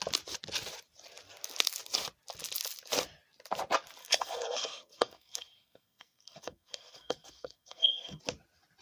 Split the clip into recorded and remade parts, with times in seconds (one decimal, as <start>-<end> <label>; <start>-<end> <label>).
0.0-4.0 recorded; 4.0-8.2 remade; 8.2-8.8 recorded